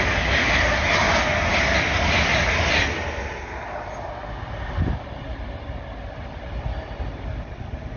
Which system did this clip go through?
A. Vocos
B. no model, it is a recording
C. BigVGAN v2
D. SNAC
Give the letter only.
B